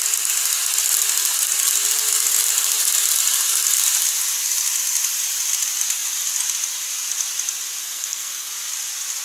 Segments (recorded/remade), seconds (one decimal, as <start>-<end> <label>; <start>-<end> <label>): 0.0-7.8 recorded; 7.8-8.5 remade; 8.5-9.2 recorded